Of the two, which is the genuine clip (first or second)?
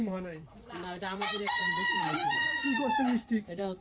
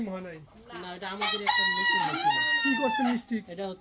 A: second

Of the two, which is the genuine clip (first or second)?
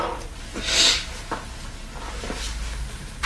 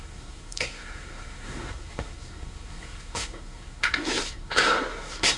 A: first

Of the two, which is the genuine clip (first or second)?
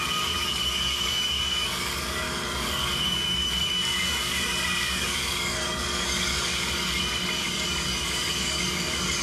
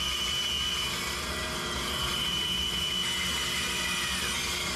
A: second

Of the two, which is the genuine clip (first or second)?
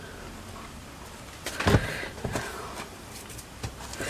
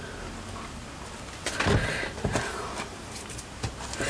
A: second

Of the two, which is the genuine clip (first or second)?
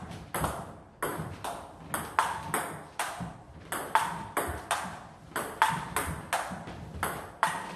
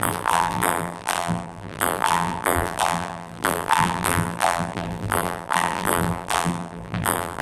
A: first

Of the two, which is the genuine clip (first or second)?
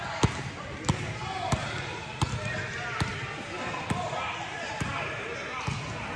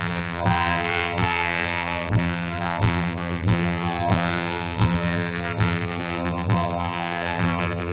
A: first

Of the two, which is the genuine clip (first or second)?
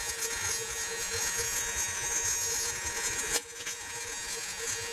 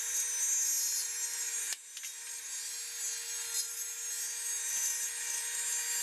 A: second